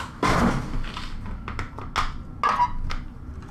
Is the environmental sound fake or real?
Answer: real